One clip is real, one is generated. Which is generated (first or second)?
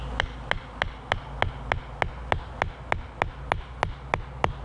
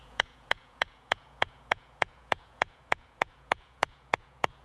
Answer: second